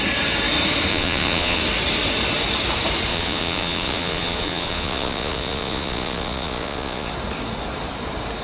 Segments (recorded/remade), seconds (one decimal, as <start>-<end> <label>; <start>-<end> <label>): 0.0-0.9 recorded; 0.9-1.6 remade; 1.6-3.1 recorded; 3.1-7.1 remade; 7.1-8.4 recorded